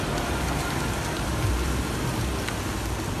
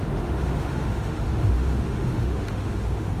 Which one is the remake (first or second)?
second